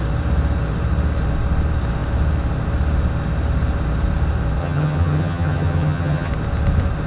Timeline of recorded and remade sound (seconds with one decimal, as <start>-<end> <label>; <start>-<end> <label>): 0.0-4.6 recorded; 4.6-6.3 remade; 6.3-7.1 recorded

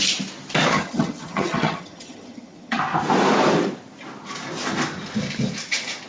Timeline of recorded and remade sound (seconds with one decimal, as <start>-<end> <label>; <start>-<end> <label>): 0.0-0.7 recorded; 0.7-2.8 remade; 2.8-6.1 recorded